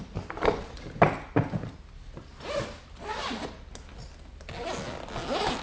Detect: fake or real real